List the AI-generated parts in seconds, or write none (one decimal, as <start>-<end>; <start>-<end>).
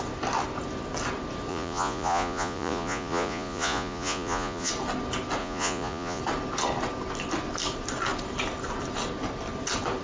1.5-4.7; 5.4-6.2